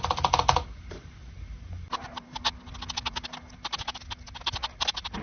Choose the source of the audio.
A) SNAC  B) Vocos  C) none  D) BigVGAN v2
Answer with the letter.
C